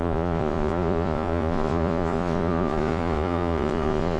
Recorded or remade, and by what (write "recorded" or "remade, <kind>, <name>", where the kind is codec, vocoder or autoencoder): remade, vocoder, Vocos